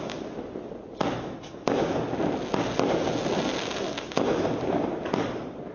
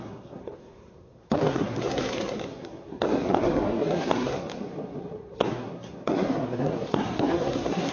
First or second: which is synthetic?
second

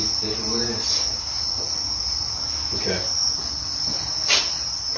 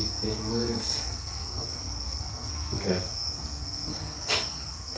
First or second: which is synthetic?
second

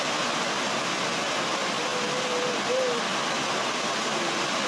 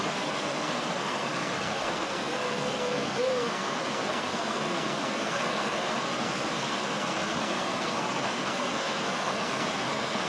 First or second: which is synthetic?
second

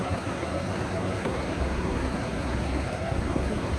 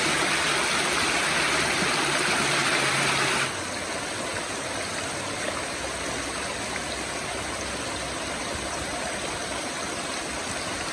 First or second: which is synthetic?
first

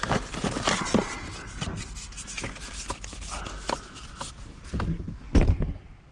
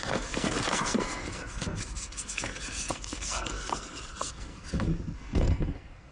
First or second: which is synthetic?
second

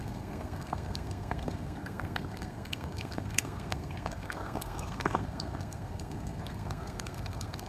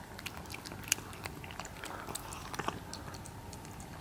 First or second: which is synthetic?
first